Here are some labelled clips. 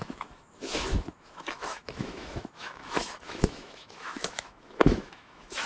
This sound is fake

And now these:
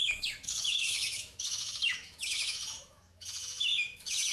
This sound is fake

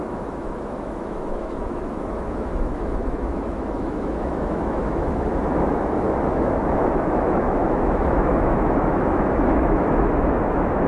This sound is fake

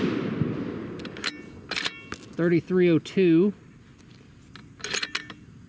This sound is real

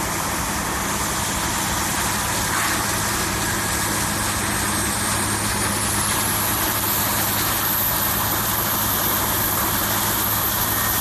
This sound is real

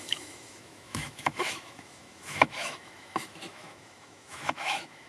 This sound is fake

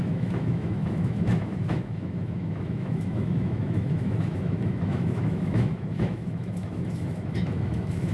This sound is fake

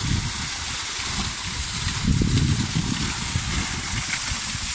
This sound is real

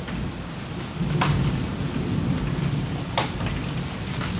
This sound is real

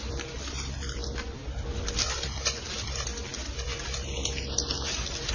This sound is real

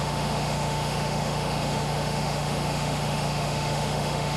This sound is fake